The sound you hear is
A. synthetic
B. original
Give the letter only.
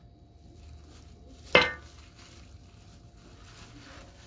B